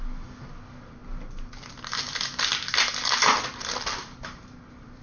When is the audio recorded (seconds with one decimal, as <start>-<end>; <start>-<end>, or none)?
0.0-5.0